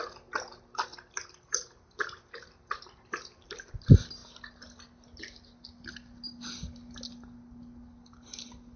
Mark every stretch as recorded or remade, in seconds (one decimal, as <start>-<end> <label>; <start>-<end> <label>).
0.0-8.8 recorded